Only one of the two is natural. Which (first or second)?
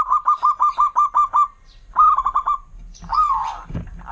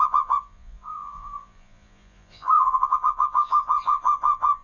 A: first